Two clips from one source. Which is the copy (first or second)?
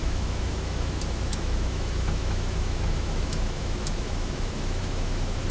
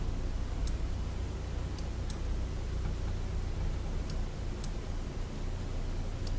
first